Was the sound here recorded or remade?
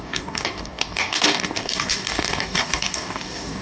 remade